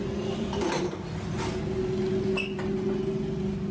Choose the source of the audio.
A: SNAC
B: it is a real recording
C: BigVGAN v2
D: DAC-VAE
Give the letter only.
B